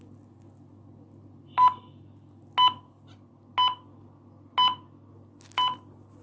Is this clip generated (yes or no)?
no